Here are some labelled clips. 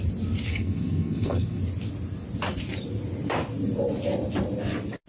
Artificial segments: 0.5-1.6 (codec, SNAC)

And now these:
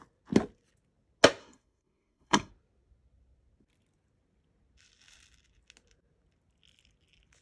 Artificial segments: 1.4-2.5 (codec, SNAC)

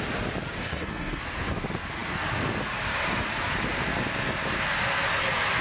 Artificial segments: 0.6-1.2 (codec, SNAC)

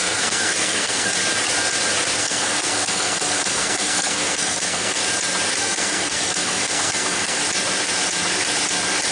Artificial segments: 0.0-1.1 (codec, SNAC); 2.2-5.0; 5.6-7.4